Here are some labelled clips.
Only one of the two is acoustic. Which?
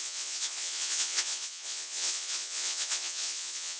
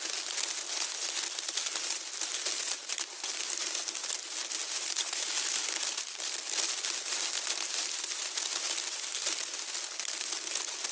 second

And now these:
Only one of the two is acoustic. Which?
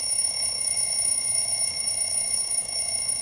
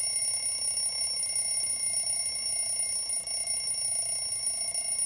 second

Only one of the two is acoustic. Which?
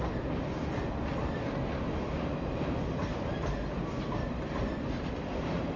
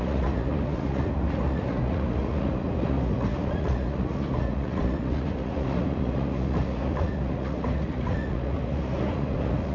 first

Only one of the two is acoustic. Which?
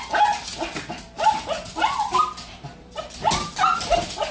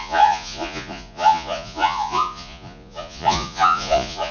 first